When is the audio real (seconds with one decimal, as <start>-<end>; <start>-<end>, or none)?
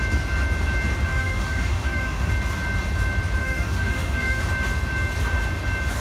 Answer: 0.0-1.1; 2.3-3.4; 4.4-6.0